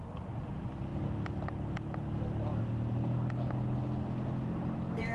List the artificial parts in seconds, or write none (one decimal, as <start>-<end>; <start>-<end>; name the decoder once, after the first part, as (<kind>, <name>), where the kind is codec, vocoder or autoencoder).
0.0-5.1 (vocoder, BigVGAN v2)

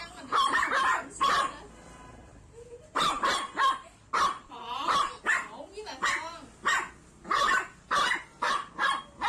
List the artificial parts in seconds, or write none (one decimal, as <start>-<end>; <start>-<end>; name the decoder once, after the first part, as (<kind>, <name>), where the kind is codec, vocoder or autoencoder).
0.0-5.2 (vocoder, BigVGAN v2); 7.4-8.9